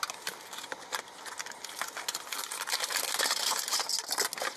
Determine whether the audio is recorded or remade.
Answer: recorded